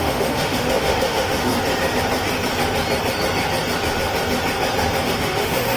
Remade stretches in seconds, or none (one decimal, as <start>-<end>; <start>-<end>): 0.0-1.5; 5.0-5.8